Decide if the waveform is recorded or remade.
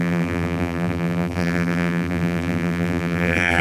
remade